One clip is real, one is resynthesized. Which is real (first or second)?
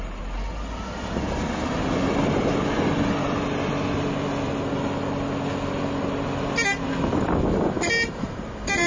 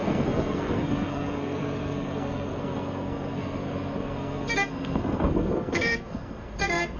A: first